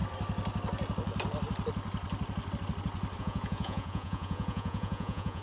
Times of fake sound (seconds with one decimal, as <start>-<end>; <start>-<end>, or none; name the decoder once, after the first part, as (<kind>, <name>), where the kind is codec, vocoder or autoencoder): 3.2-5.4 (vocoder, Vocos)